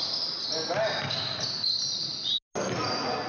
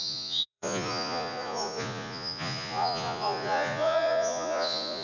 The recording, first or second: first